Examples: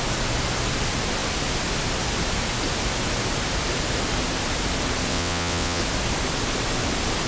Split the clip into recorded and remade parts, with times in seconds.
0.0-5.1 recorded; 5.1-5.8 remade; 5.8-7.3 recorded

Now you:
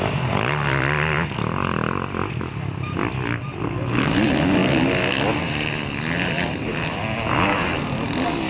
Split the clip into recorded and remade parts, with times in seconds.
0.0-8.5 recorded

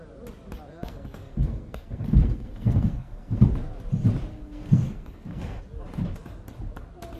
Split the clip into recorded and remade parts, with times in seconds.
0.0-0.7 recorded; 0.7-3.5 remade; 3.5-4.3 recorded; 4.3-5.6 remade; 5.6-7.2 recorded